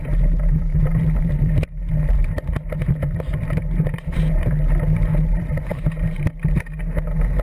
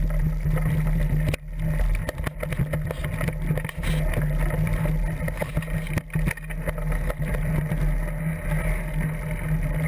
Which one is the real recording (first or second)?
second